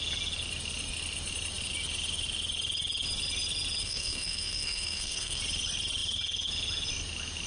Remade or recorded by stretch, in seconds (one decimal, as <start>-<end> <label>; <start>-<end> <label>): 0.0-3.8 recorded; 3.8-5.4 remade; 5.4-7.5 recorded